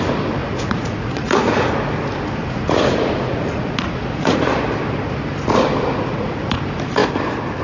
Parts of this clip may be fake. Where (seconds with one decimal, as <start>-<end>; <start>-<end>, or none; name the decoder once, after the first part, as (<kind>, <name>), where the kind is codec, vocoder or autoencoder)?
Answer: 0.4-1.7 (vocoder, Vocos); 2.4-4.5; 5.8-6.6